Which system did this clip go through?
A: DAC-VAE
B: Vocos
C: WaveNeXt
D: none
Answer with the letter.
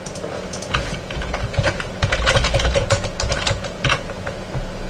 B